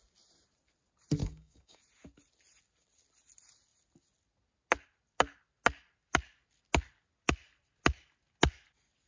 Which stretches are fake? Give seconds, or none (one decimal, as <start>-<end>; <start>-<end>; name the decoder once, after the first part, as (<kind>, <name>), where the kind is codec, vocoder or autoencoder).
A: 1.2-1.8 (codec, DAC)